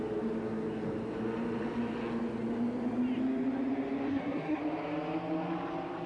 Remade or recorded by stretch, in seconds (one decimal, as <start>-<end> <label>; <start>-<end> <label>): 0.0-4.1 recorded; 4.1-4.6 remade; 4.6-6.1 recorded